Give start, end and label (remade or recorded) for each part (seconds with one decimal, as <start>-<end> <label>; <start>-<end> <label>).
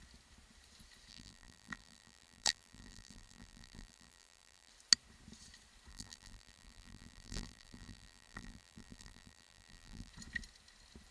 0.0-1.1 recorded; 1.1-4.7 remade; 4.7-5.9 recorded; 5.9-10.1 remade; 10.1-11.1 recorded